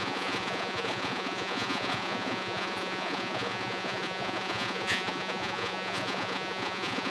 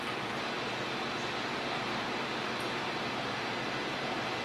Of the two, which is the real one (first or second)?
second